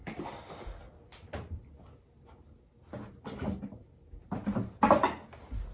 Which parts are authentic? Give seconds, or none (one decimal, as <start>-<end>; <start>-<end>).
0.0-5.7